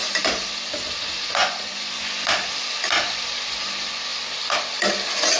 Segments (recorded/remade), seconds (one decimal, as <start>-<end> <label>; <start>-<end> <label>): 0.0-1.4 recorded; 1.4-2.0 remade; 2.0-5.4 recorded